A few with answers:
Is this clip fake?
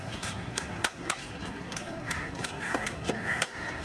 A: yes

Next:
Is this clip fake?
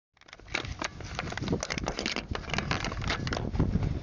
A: no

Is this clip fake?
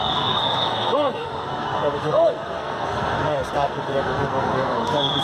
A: yes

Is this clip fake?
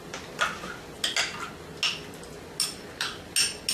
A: no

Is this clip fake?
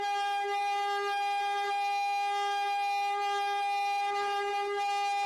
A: no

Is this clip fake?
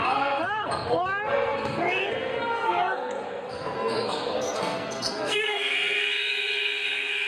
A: yes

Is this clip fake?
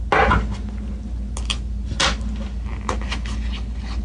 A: no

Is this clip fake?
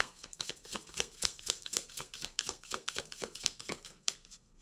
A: yes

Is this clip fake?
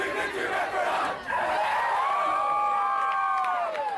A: no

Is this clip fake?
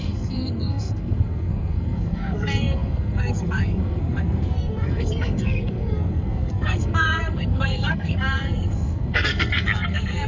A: yes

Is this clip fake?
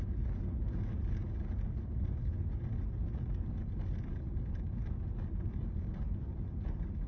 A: no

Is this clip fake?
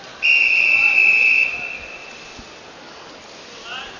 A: no